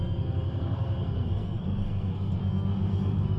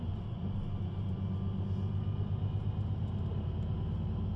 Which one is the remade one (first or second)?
first